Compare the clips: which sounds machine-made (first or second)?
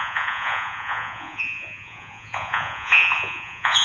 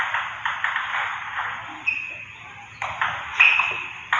first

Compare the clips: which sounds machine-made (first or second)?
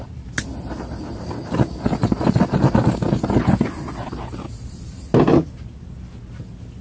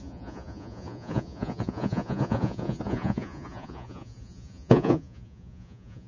second